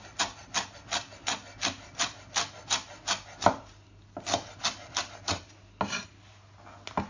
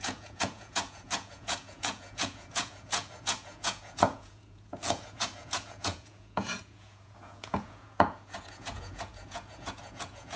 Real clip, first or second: first